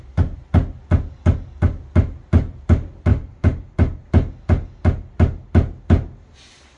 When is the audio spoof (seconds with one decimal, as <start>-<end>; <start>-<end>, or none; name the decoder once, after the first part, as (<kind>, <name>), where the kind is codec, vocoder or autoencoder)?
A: 3.1-4.1 (vocoder, BigVGAN v2)